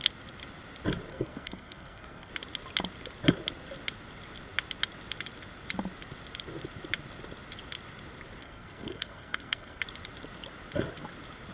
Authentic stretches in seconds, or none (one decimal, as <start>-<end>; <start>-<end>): 0.0-1.1; 2.3-8.4; 9.8-11.5